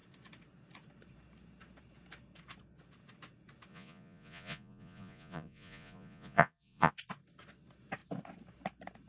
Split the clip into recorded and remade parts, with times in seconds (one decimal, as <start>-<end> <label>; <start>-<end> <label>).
0.0-3.7 recorded; 3.7-6.9 remade; 6.9-9.1 recorded